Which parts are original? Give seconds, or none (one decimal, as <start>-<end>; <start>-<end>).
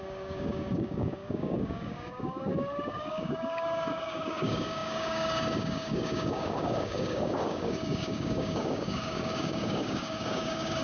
none